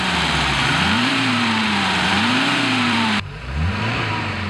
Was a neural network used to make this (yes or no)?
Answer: yes